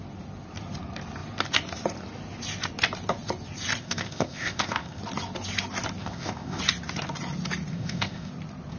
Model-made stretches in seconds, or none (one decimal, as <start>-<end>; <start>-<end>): 3.8-5.0; 6.0-6.6; 7.7-8.3